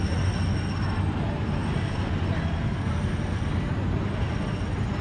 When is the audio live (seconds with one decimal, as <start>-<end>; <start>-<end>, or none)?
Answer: 0.0-5.0